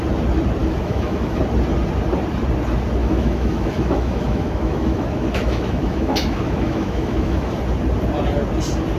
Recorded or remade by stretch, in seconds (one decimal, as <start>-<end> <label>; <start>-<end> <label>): 0.0-0.6 recorded; 0.6-1.4 remade; 1.4-3.0 recorded; 3.0-7.6 remade; 7.6-9.0 recorded